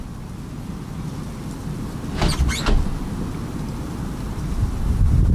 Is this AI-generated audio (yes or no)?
no